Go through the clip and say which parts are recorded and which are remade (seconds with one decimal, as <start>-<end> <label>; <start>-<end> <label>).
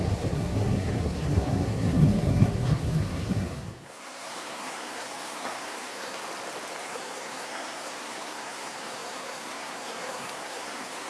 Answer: 0.0-6.2 remade; 6.2-6.8 recorded; 6.8-11.1 remade